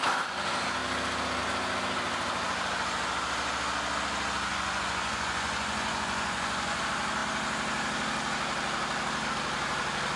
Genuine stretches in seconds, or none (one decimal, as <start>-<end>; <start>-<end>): 0.0-4.5; 6.8-10.2